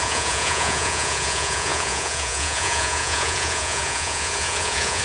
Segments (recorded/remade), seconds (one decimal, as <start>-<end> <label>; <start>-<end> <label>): 0.0-5.0 remade